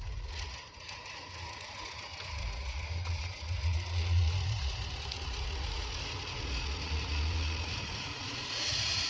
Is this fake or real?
fake